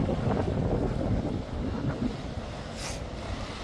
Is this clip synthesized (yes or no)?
no